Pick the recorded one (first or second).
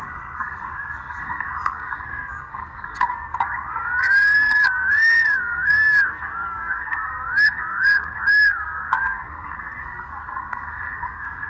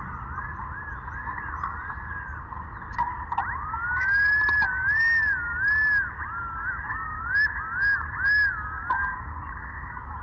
second